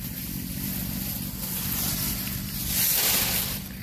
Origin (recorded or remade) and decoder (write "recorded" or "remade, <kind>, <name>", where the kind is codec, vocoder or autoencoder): recorded